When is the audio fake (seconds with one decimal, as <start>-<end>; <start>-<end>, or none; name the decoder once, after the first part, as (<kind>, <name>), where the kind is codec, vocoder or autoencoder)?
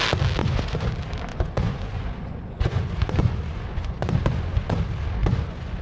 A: 0.4-0.9 (vocoder, Vocos); 1.3-4.8; 5.2-5.8